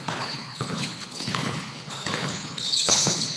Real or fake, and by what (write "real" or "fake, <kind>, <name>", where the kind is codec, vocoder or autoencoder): fake, codec, HILCodec